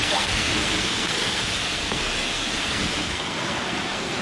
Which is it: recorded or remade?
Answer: remade